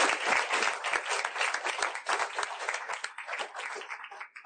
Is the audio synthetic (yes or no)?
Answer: no